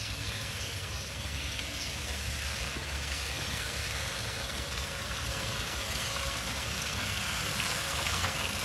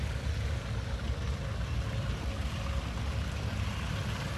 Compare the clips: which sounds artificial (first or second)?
first